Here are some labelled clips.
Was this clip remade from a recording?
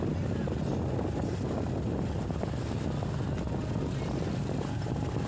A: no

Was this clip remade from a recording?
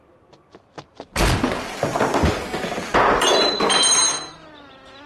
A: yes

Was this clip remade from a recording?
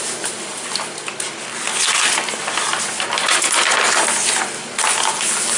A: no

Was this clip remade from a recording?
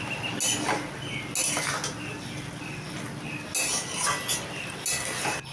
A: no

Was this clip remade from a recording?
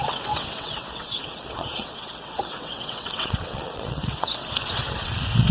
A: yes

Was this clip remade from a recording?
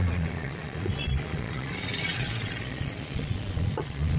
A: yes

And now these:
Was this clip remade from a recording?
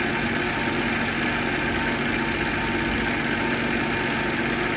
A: no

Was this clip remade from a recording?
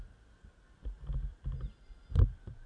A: no